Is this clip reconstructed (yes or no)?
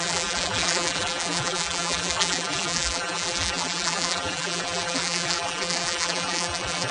yes